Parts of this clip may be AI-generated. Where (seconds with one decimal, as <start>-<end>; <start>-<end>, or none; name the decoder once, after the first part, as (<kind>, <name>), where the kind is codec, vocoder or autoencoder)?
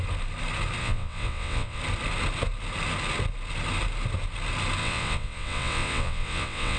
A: 0.8-1.8 (vocoder, WaveNeXt); 4.8-6.8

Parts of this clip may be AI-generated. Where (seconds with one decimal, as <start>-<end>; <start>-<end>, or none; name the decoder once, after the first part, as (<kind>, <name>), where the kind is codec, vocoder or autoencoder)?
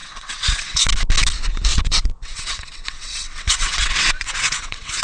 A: 0.0-0.8 (vocoder, WaveNeXt); 1.7-5.0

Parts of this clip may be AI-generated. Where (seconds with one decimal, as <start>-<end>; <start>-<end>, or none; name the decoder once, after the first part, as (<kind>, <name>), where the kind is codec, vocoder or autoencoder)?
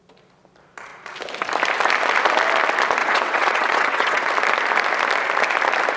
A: 3.0-4.3 (vocoder, WaveNeXt)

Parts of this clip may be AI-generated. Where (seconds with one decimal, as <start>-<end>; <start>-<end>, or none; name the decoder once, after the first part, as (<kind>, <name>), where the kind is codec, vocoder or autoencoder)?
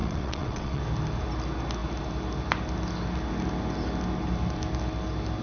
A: 0.0-0.8 (vocoder, WaveNeXt)